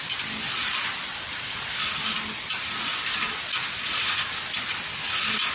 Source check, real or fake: real